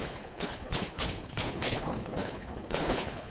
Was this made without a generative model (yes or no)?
no